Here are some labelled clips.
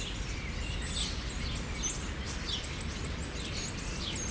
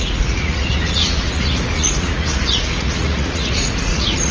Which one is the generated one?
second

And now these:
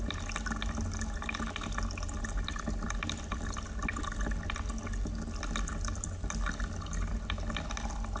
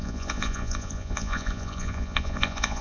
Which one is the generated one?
second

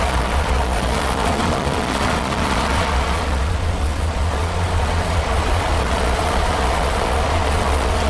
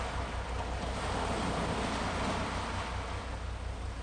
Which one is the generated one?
first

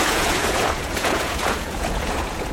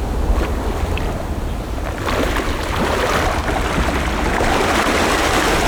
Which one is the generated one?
first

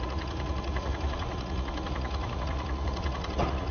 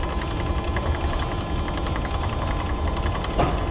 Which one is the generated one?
first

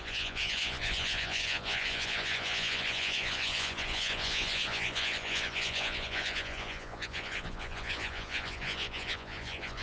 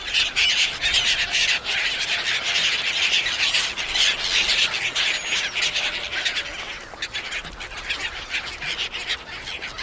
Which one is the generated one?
first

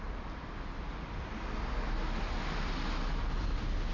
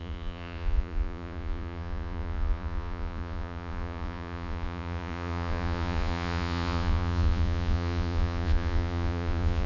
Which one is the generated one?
second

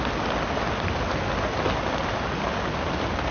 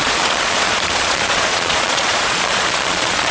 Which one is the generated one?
second